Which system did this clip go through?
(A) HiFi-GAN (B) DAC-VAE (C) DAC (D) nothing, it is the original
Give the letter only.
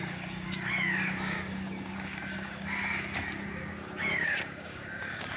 C